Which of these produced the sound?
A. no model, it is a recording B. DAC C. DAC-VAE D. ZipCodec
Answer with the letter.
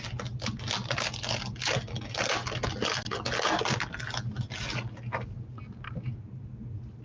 A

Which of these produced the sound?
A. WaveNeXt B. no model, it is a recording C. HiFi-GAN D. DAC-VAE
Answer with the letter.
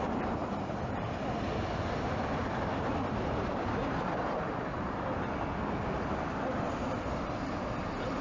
B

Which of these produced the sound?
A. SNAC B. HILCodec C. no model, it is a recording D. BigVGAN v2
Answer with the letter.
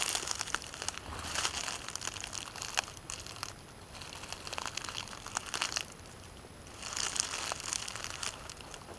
C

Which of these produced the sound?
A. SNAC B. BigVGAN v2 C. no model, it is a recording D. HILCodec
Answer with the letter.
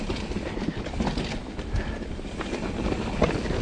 C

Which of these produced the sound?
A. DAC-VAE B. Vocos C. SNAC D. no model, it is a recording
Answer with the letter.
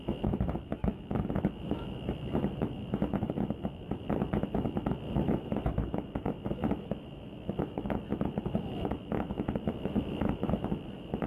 A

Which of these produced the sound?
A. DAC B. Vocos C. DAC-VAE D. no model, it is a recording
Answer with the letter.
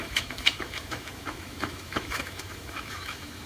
C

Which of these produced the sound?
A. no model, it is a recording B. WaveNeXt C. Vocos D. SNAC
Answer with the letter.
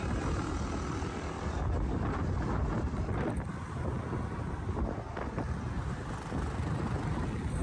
A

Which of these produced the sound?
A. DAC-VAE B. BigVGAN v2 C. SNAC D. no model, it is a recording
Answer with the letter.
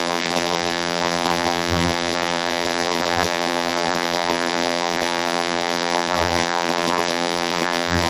B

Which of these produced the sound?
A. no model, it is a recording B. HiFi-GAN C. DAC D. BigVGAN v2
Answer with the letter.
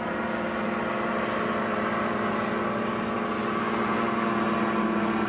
A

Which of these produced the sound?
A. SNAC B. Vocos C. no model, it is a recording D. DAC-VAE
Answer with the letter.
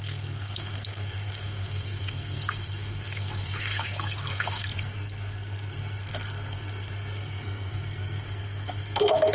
A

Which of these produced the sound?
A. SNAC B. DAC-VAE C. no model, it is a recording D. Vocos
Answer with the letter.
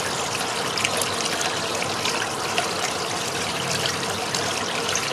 C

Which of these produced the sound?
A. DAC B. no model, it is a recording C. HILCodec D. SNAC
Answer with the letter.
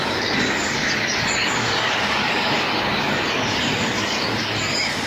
A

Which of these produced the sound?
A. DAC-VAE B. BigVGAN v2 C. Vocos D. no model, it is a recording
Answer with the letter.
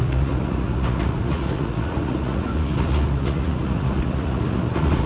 C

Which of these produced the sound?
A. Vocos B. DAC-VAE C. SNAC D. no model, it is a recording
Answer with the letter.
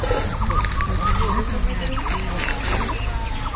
D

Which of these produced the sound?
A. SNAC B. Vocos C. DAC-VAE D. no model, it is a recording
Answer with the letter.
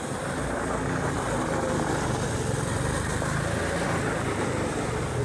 D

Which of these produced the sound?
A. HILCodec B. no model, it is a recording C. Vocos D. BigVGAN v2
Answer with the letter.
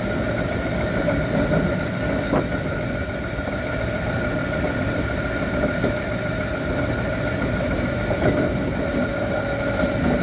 B